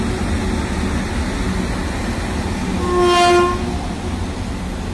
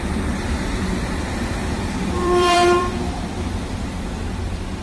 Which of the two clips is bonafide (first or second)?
first